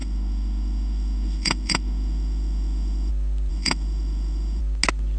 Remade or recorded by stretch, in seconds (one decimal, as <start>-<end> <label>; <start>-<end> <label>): 0.0-3.1 remade; 3.1-3.5 recorded; 3.5-4.6 remade; 4.6-5.2 recorded